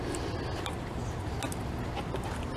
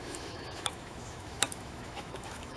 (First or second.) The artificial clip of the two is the second